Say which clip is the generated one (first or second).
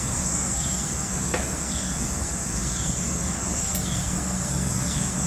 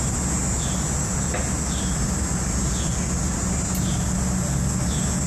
first